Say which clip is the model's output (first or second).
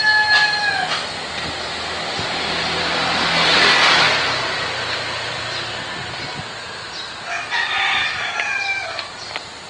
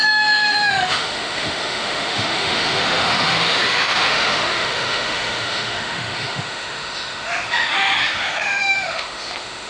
second